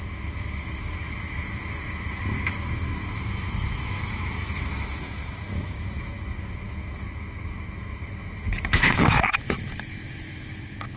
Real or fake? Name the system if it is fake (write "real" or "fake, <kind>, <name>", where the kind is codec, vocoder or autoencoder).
fake, autoencoder, DAC-VAE